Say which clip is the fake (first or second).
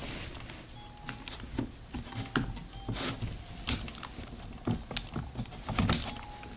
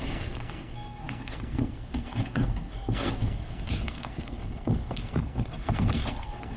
second